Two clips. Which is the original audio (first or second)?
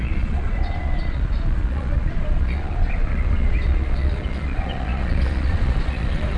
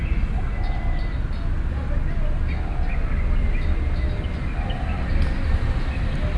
second